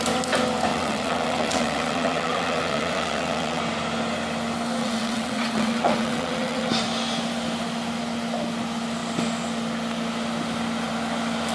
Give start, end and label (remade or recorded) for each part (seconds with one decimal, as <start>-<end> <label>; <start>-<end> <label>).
0.0-0.7 recorded; 0.7-3.6 remade; 3.6-4.8 recorded; 4.8-6.7 remade; 6.7-11.5 recorded